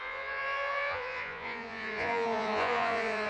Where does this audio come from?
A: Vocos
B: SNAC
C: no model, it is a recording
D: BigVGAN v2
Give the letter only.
A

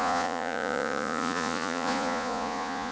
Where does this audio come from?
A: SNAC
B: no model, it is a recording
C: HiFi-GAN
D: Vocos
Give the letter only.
D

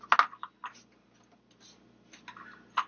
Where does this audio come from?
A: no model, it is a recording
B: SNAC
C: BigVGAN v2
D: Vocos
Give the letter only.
A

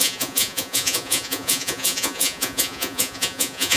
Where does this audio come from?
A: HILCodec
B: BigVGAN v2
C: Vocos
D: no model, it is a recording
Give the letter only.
C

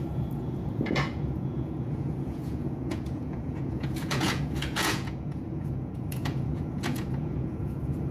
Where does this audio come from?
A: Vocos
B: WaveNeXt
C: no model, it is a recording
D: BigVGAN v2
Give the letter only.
A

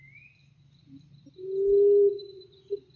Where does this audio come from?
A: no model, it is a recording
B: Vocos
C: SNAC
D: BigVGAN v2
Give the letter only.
A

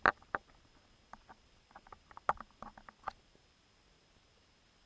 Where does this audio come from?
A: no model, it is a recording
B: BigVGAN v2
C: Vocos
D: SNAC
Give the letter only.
A